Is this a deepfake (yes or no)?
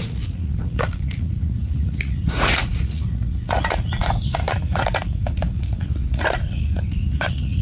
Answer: yes